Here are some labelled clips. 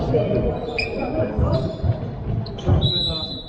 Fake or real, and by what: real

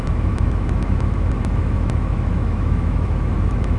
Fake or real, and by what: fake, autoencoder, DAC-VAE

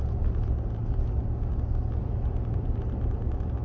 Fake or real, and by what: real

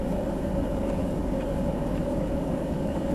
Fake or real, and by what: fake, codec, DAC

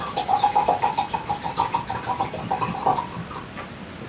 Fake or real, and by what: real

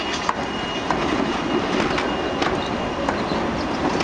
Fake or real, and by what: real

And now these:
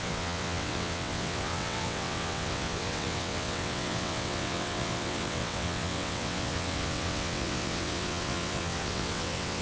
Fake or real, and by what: fake, vocoder, WaveNeXt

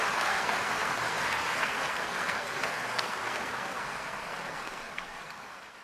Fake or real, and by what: fake, codec, SNAC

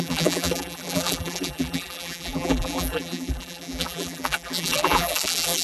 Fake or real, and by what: fake, vocoder, BigVGAN v2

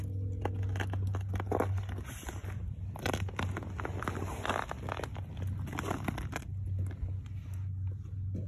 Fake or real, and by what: real